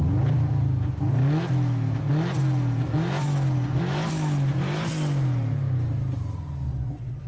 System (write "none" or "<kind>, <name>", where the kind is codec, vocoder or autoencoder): none